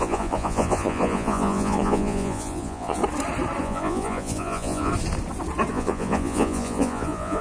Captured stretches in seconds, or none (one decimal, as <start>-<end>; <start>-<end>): 3.0-3.6; 4.9-5.7